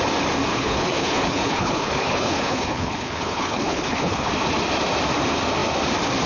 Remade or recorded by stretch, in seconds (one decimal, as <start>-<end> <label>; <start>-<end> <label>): 0.0-0.5 recorded; 0.5-4.3 remade; 4.3-6.3 recorded